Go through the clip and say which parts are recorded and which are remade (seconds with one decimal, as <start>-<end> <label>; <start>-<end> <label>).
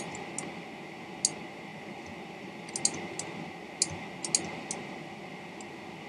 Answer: 0.0-6.1 recorded